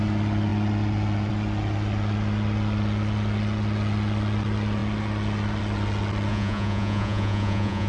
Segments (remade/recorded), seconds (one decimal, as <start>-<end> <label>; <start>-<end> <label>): 0.0-6.3 recorded; 6.3-7.9 remade